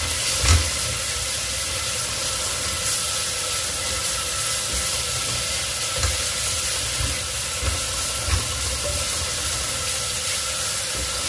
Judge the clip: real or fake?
real